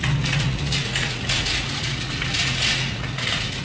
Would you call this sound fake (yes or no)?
yes